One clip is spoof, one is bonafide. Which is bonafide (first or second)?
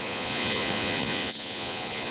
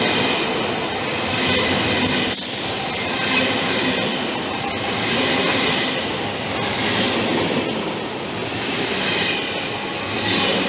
second